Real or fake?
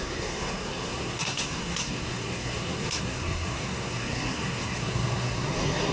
fake